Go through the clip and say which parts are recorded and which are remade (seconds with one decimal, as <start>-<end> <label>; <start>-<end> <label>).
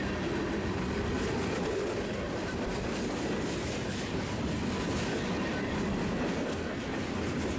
0.0-6.3 recorded; 6.3-6.8 remade; 6.8-7.6 recorded